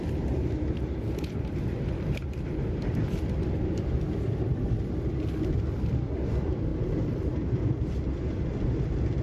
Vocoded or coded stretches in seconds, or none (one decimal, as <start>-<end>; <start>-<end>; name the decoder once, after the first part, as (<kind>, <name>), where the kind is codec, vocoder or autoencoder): 0.0-9.2 (vocoder, BigVGAN v2)